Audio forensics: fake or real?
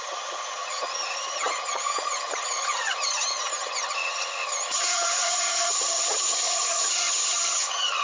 fake